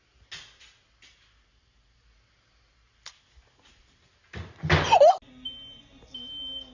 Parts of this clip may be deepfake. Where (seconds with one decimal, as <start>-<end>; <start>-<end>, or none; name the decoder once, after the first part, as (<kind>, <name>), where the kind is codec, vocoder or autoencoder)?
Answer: none

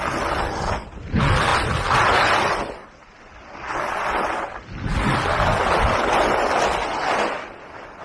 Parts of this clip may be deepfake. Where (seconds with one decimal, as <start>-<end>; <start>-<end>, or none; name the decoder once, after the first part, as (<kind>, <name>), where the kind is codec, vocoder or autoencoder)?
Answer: 1.5-2.9 (vocoder, BigVGAN v2)

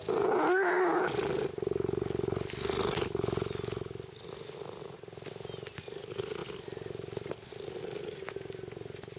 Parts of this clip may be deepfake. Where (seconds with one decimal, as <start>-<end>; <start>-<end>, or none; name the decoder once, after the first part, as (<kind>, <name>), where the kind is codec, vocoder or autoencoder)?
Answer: none

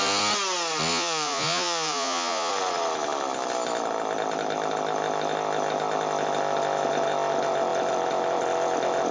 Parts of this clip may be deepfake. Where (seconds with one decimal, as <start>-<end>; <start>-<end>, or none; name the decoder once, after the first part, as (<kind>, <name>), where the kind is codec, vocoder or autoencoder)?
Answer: 0.9-2.5 (vocoder, Vocos)